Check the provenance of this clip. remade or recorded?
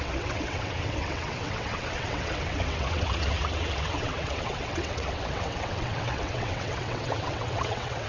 remade